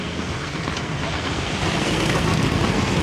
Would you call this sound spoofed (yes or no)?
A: yes